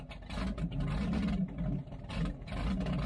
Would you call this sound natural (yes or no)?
yes